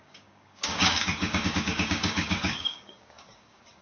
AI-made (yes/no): yes